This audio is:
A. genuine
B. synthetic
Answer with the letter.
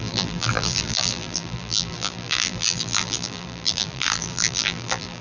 B